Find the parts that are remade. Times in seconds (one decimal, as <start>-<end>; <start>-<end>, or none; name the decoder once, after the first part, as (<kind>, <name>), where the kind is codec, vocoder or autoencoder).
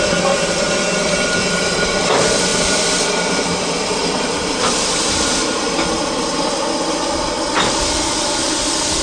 2.5-7.3 (vocoder, BigVGAN v2)